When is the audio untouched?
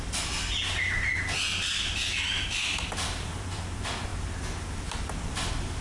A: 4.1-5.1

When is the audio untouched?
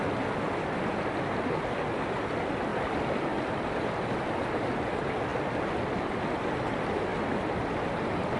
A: 0.0-2.7; 3.6-8.4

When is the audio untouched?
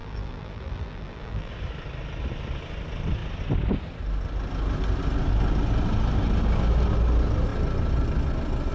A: 1.5-8.7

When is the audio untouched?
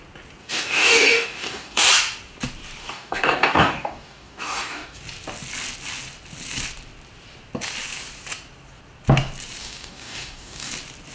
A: 0.0-0.4; 1.9-2.8; 5.0-9.6; 10.7-11.1